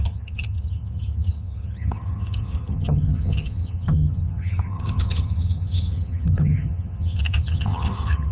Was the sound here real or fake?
fake